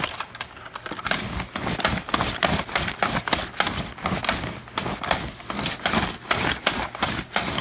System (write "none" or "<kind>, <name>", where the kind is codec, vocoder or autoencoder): none